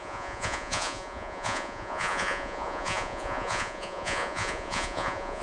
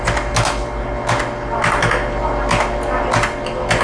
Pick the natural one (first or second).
second